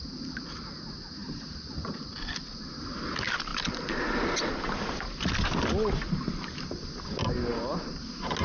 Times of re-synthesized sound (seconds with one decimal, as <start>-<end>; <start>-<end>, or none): 0.0-0.6; 1.2-2.1